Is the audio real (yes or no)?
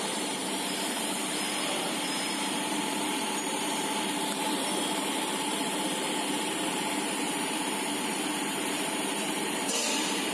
no